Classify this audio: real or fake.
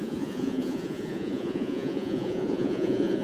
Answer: fake